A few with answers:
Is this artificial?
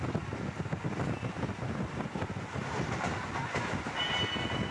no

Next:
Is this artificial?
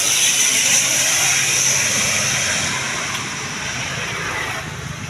no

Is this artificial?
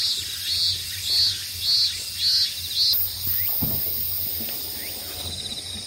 no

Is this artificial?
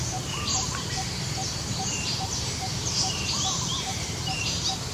yes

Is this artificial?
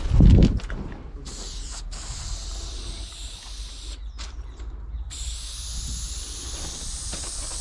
no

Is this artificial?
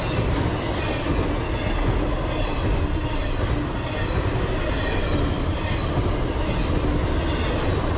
no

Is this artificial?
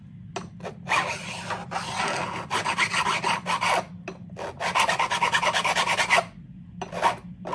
no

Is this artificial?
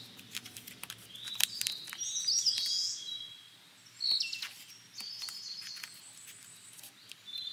no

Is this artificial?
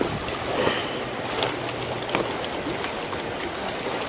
no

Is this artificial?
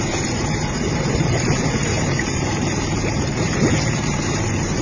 yes